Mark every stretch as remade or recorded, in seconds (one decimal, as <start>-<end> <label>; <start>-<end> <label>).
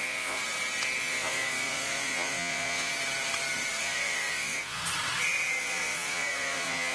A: 0.0-0.4 remade; 0.4-1.0 recorded; 1.0-2.9 remade; 2.9-3.8 recorded; 3.8-4.8 remade; 4.8-5.6 recorded; 5.6-6.9 remade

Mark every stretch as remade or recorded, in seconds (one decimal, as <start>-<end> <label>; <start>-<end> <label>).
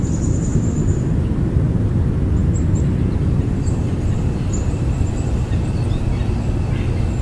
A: 0.0-0.5 recorded; 0.5-2.0 remade; 2.0-2.4 recorded; 2.4-6.1 remade; 6.1-7.2 recorded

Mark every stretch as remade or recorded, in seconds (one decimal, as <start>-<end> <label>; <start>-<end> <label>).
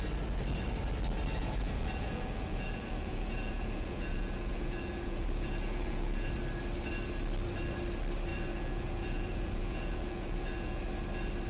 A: 0.0-1.4 recorded; 1.4-6.3 remade; 6.3-8.3 recorded; 8.3-10.8 remade; 10.8-11.5 recorded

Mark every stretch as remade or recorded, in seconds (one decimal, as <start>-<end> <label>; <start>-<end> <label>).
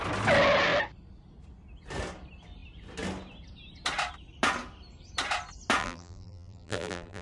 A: 0.0-5.8 recorded; 5.8-7.2 remade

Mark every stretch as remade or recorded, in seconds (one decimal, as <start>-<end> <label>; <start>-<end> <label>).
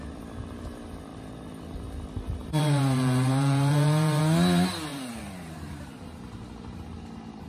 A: 0.0-2.4 recorded; 2.4-4.2 remade; 4.2-4.9 recorded; 4.9-6.2 remade; 6.2-7.5 recorded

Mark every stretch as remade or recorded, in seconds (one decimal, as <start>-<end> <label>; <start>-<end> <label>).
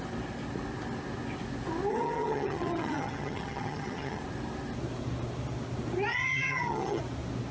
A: 0.0-1.9 recorded; 1.9-4.2 remade; 4.2-6.1 recorded; 6.1-7.0 remade; 7.0-7.5 recorded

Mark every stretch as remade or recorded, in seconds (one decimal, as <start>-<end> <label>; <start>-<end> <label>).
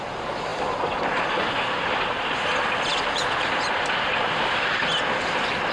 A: 0.0-5.7 recorded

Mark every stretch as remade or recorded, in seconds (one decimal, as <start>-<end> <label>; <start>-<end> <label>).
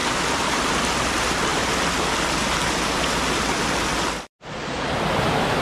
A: 0.0-5.6 recorded